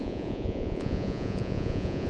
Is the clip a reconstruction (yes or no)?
yes